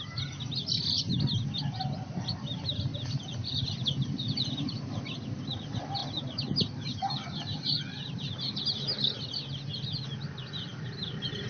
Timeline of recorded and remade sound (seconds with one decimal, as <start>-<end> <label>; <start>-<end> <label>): 0.0-2.9 recorded; 2.9-4.7 remade; 4.7-6.0 recorded; 6.0-8.6 remade; 8.6-10.7 recorded; 10.7-11.5 remade